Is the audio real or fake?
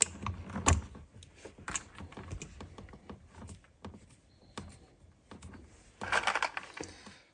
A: real